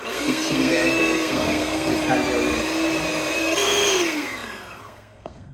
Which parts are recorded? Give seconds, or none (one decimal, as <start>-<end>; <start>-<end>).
1.9-3.4